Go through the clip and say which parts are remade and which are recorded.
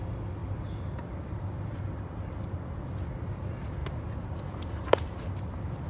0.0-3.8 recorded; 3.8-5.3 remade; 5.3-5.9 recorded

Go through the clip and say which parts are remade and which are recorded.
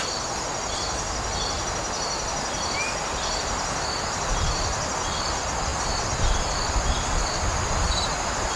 0.0-8.6 recorded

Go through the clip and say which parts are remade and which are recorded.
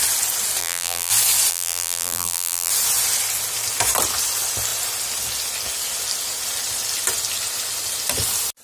0.0-0.6 recorded; 0.6-1.1 remade; 1.1-1.5 recorded; 1.5-2.7 remade; 2.7-8.6 recorded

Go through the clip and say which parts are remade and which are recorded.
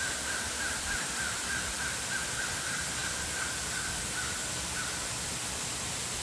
0.0-6.2 recorded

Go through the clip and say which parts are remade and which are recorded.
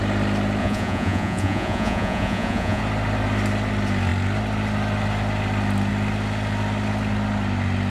0.0-0.6 recorded; 0.6-2.8 remade; 2.8-7.9 recorded